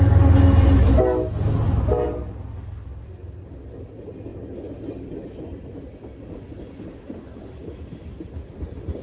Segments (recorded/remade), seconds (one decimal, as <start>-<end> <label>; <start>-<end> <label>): 0.0-9.0 recorded